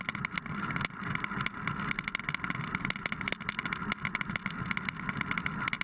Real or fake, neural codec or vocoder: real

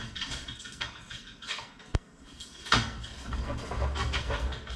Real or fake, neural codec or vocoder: fake, codec, SNAC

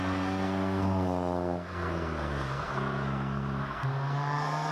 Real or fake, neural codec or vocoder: fake, codec, SNAC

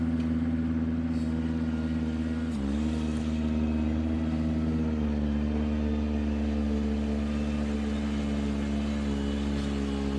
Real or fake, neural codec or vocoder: real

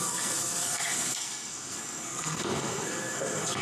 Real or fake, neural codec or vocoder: fake, codec, SNAC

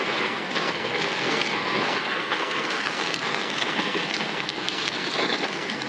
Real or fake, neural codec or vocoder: fake, codec, SNAC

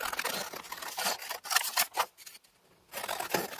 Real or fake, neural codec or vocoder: real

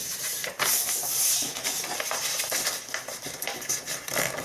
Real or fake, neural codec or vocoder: real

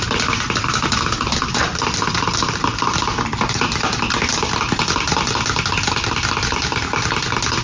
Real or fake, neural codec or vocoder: real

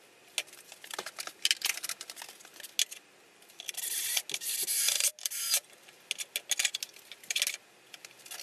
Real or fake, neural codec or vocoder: real